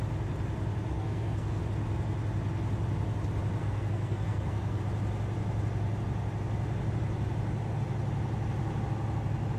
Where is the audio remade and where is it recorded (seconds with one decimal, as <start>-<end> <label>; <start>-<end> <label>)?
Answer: 0.0-0.9 recorded; 0.9-1.6 remade; 1.6-3.6 recorded; 3.6-4.8 remade; 4.8-9.6 recorded